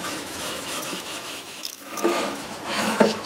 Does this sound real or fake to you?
fake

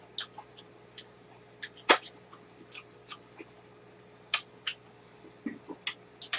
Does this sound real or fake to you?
real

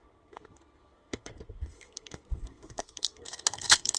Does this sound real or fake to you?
fake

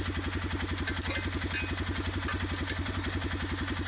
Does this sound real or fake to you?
real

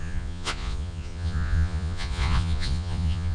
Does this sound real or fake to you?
fake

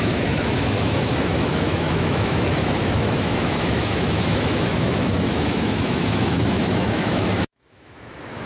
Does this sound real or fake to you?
fake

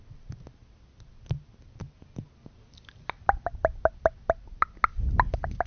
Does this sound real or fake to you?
real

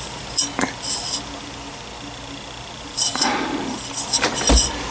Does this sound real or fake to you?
real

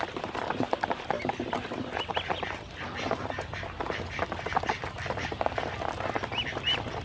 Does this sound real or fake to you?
real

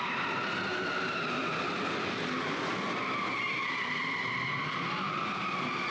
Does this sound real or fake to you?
real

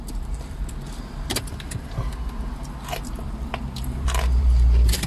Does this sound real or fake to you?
fake